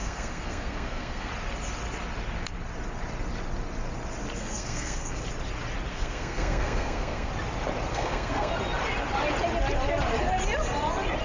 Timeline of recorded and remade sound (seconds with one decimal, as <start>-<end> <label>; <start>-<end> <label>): 0.0-1.3 remade; 1.3-4.4 recorded; 4.4-5.2 remade; 5.2-5.9 recorded; 5.9-7.3 remade; 7.3-7.9 recorded; 7.9-8.5 remade; 8.5-11.2 recorded